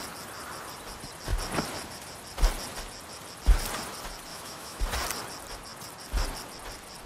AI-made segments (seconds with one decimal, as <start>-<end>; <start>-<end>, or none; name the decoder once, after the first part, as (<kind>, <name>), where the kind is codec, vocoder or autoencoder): 4.3-4.8 (autoencoder, DAC-VAE)